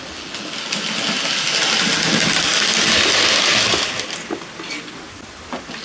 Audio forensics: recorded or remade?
recorded